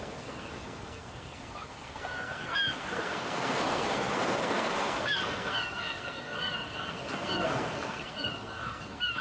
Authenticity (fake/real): fake